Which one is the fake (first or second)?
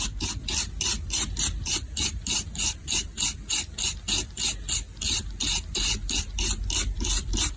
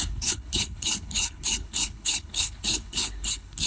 second